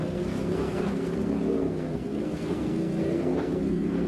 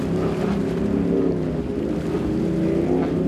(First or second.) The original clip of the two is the second